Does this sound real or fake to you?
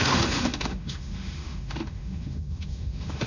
fake